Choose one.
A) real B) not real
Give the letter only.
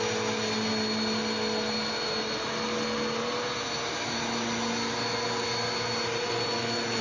A